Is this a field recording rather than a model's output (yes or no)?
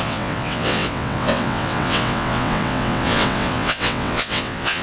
no